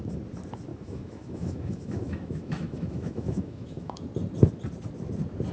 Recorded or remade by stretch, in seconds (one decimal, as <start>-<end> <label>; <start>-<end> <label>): 0.0-0.7 recorded; 0.7-4.0 remade; 4.0-5.5 recorded